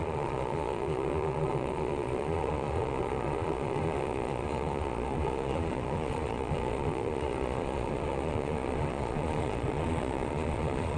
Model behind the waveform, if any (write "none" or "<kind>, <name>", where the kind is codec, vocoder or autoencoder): vocoder, Vocos